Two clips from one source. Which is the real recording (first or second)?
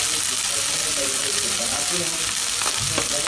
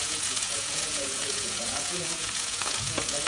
first